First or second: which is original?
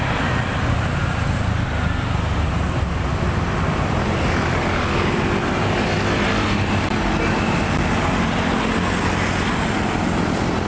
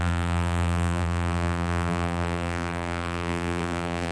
first